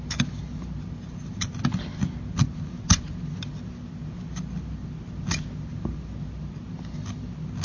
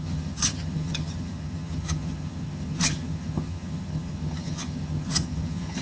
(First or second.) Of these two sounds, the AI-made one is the second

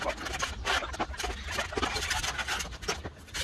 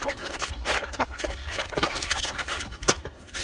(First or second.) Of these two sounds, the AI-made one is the second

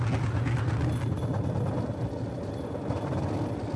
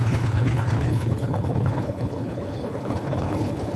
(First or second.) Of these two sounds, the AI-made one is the second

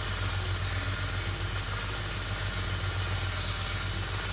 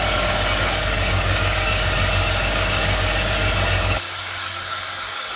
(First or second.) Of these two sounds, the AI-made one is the second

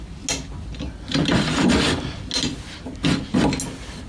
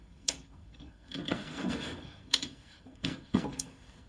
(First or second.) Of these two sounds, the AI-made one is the second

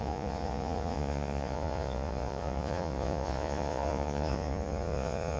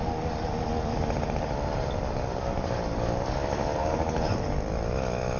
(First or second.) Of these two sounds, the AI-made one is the first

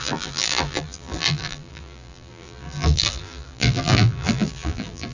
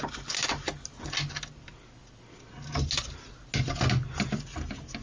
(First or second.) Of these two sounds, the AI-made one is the first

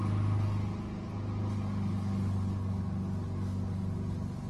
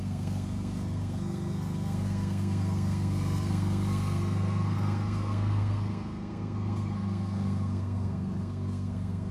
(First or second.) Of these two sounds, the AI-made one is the second